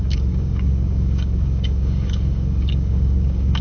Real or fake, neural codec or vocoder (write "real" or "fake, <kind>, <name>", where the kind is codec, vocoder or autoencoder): fake, codec, DAC